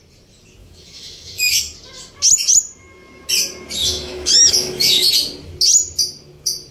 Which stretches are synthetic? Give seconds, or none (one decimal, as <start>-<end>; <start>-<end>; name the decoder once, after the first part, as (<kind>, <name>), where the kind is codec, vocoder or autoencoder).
0.6-1.6 (autoencoder, DAC-VAE); 3.8-5.1